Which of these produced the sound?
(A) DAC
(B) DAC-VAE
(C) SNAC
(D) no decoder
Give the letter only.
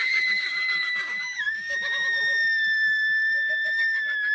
A